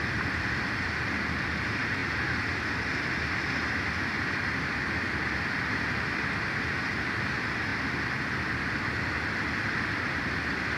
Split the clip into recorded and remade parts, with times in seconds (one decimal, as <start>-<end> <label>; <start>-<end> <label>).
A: 0.0-10.8 recorded